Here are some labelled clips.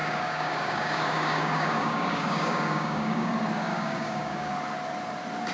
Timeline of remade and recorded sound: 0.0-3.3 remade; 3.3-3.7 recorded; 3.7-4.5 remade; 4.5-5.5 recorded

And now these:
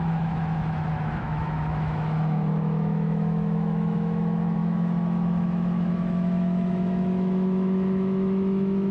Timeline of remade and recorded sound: 0.0-8.9 remade

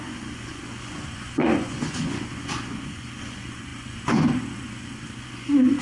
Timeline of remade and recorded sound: 0.0-5.8 remade